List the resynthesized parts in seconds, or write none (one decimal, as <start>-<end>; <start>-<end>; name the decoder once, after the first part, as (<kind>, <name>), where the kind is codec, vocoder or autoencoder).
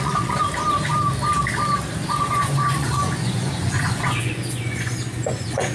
0.0-0.4 (vocoder, Vocos); 2.3-5.7